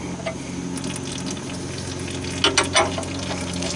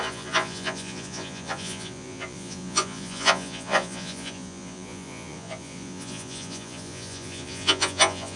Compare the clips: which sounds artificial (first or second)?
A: second